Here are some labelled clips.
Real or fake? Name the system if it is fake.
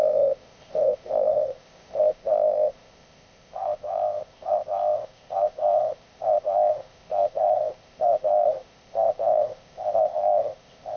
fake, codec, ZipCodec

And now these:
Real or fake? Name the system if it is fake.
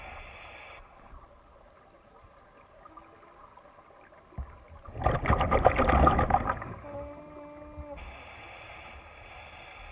real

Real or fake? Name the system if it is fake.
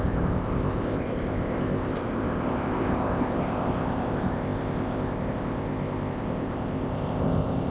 fake, codec, ZipCodec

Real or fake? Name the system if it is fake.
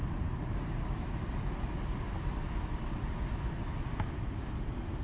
real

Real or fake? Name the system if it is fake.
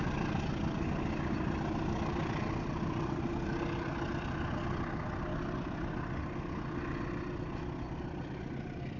real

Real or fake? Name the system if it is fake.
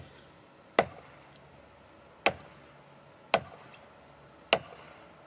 real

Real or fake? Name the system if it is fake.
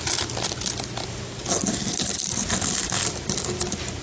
real